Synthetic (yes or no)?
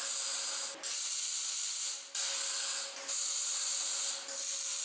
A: no